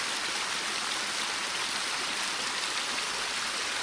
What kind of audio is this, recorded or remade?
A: recorded